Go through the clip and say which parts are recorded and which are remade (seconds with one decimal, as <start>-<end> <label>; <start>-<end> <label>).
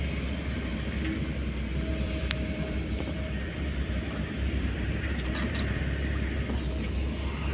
0.0-1.9 recorded; 1.9-5.8 remade; 5.8-7.5 recorded